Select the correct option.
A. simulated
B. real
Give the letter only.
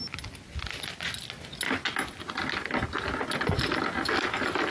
B